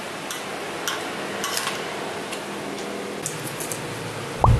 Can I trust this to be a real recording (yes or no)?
yes